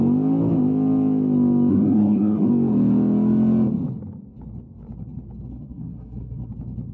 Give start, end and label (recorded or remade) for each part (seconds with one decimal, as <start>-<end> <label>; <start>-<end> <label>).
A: 0.0-1.7 recorded; 1.7-2.5 remade; 2.5-5.5 recorded; 5.5-6.5 remade; 6.5-6.9 recorded

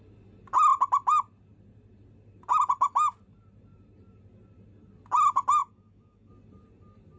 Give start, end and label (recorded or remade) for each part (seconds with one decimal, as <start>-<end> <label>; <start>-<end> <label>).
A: 0.0-5.6 recorded; 5.6-6.3 remade; 6.3-7.2 recorded

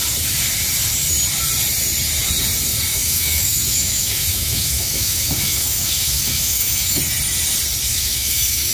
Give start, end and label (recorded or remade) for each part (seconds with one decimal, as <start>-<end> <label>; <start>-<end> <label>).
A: 0.0-2.9 recorded; 2.9-7.0 remade; 7.0-7.9 recorded; 7.9-8.7 remade

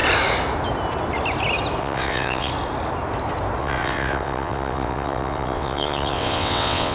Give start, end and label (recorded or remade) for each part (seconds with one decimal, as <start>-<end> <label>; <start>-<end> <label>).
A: 0.0-1.8 recorded; 1.8-2.5 remade; 2.5-3.6 recorded; 3.6-6.9 remade

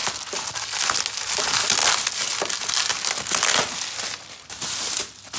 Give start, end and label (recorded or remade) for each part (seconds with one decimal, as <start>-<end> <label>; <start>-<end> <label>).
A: 0.0-5.4 recorded